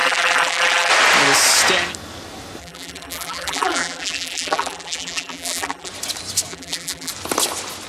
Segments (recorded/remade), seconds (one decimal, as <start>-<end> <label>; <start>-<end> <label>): 0.0-0.9 remade; 0.9-2.6 recorded; 2.6-5.9 remade; 5.9-6.5 recorded; 6.5-7.1 remade; 7.1-7.9 recorded